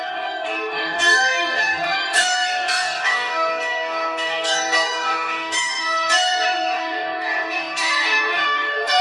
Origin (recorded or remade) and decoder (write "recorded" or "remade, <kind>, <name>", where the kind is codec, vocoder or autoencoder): remade, codec, DAC